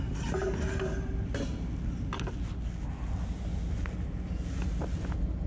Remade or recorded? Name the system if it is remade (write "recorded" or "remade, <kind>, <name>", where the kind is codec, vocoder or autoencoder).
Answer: recorded